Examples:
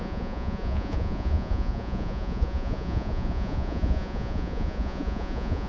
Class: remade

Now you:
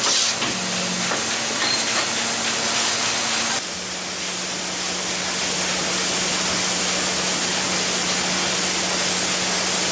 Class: recorded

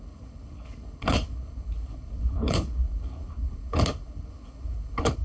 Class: remade